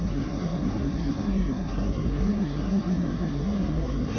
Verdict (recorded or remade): remade